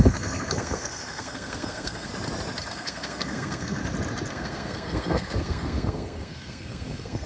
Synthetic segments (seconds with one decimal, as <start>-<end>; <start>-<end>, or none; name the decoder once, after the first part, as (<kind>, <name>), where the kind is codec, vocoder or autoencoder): 0.0-2.1 (codec, SNAC); 2.7-3.8; 4.3-7.3